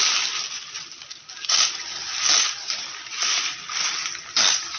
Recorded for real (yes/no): yes